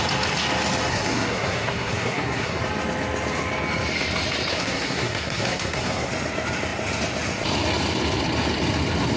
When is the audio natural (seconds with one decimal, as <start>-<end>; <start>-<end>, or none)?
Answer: 0.0-0.9; 2.6-4.5; 6.1-9.2